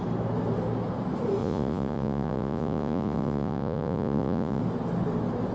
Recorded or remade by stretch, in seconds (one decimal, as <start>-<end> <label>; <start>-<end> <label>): 0.0-1.4 recorded; 1.4-4.6 remade; 4.6-5.5 recorded